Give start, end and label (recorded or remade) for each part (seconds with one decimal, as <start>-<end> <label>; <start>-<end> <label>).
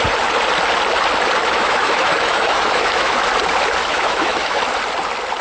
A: 0.0-1.4 recorded; 1.4-3.2 remade; 3.2-3.8 recorded; 3.8-4.6 remade; 4.6-5.4 recorded